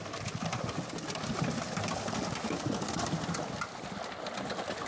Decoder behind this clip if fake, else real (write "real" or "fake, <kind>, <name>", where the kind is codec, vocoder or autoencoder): real